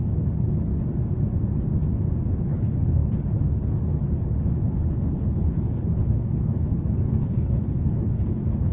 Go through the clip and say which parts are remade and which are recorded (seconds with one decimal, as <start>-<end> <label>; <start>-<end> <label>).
0.0-0.7 remade; 0.7-2.3 recorded; 2.3-8.7 remade